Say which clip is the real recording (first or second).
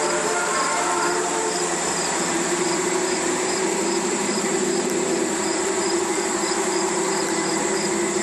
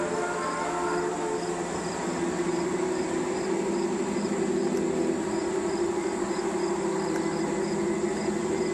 second